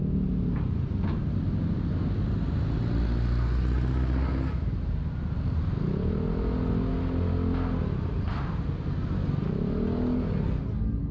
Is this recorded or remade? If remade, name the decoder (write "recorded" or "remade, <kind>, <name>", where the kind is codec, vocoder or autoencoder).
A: recorded